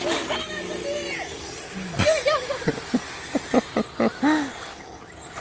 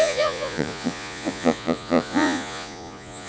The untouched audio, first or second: first